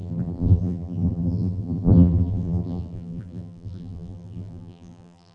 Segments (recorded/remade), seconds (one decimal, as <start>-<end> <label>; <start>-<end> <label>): 0.0-5.3 remade